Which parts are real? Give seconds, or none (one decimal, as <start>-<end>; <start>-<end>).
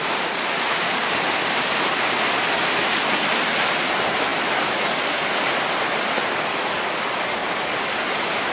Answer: 0.0-8.5